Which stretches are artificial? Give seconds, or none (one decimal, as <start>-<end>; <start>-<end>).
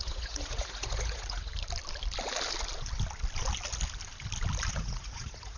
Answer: 0.0-1.5; 4.7-5.6